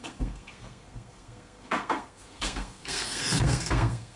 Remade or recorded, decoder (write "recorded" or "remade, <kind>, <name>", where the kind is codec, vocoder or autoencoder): remade, codec, SNAC